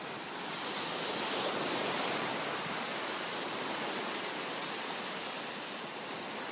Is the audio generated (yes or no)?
yes